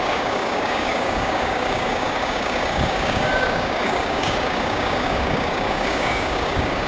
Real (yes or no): no